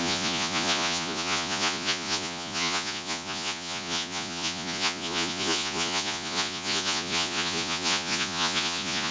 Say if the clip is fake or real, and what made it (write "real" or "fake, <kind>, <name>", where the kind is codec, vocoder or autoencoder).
fake, vocoder, Vocos